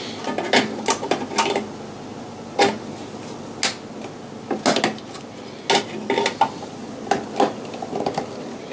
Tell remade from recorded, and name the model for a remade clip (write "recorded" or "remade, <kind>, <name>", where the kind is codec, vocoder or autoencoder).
recorded